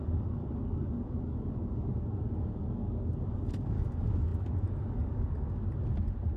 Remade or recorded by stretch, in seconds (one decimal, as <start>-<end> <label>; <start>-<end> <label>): 0.0-5.7 remade; 5.7-6.4 recorded

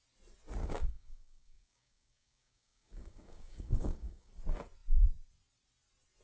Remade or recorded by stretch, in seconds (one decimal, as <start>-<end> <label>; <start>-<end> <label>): 0.0-0.6 recorded; 0.6-4.3 remade; 4.3-6.2 recorded

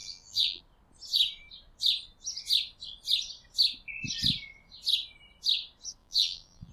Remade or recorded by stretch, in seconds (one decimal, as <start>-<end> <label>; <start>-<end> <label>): 0.0-0.6 remade; 0.6-6.0 recorded; 6.0-6.7 remade

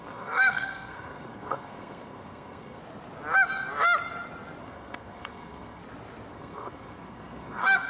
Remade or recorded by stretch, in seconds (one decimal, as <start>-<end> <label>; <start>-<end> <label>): 0.0-2.8 remade; 2.8-4.6 recorded; 4.6-5.8 remade; 5.8-6.3 recorded; 6.3-7.9 remade

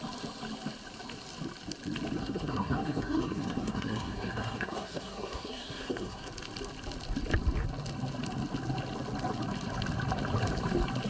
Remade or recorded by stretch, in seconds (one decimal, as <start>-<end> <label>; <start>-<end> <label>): 0.0-2.2 recorded; 2.2-6.3 remade; 6.3-11.1 recorded

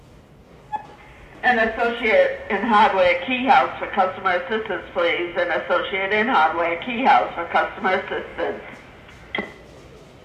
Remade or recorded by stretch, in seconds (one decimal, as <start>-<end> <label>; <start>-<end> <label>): 0.0-10.2 recorded

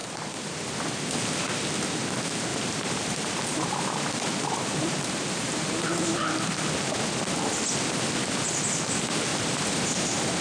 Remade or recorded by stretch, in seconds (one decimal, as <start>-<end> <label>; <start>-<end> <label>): 0.0-0.7 remade; 0.7-2.5 recorded; 2.5-5.9 remade; 5.9-9.3 recorded; 9.3-10.4 remade

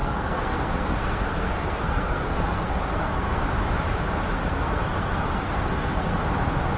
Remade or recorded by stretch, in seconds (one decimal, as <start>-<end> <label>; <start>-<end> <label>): 0.0-3.4 remade; 3.4-4.3 recorded; 4.3-6.2 remade; 6.2-6.8 recorded